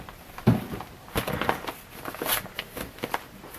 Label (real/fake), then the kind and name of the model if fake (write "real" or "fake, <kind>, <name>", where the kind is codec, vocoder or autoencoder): fake, vocoder, BigVGAN v2